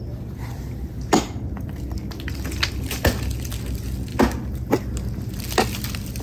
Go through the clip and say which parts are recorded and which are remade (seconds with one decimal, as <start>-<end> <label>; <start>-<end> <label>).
0.0-6.2 recorded